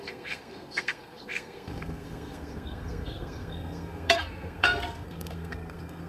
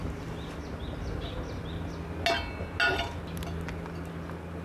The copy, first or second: first